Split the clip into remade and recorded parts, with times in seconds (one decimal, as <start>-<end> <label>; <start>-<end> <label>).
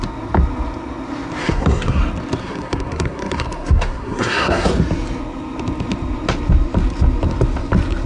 0.0-1.4 recorded; 1.4-2.0 remade; 2.0-2.4 recorded; 2.4-4.7 remade; 4.7-8.1 recorded